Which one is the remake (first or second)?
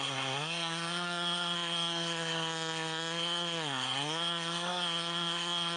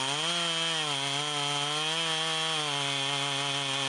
first